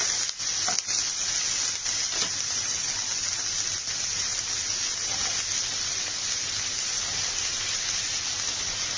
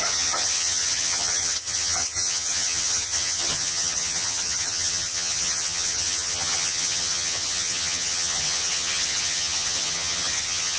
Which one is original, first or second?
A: first